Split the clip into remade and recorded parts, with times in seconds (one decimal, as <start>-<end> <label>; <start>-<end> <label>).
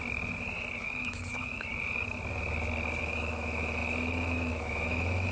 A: 0.0-0.8 recorded; 0.8-1.7 remade; 1.7-3.0 recorded; 3.0-5.3 remade